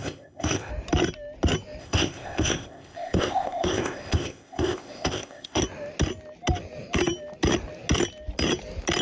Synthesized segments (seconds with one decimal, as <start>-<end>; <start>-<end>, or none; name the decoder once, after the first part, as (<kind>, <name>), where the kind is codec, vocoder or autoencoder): 0.0-0.7 (codec, ZipCodec); 1.8-5.6